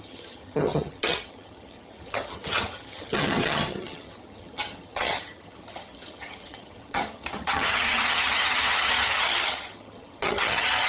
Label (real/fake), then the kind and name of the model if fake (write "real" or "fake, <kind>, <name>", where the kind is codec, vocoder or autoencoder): fake, vocoder, HiFi-GAN